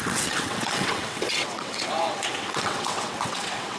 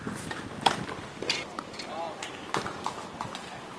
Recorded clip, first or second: second